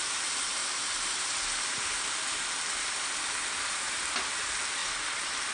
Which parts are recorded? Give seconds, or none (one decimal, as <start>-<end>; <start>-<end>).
0.0-5.5